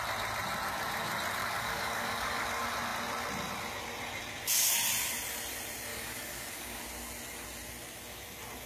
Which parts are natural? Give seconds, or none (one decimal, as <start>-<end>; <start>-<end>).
0.0-1.4; 2.5-5.9; 6.8-8.7